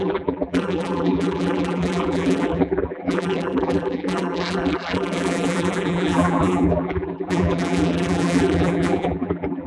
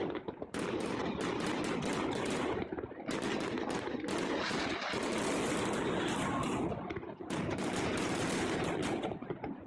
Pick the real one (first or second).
second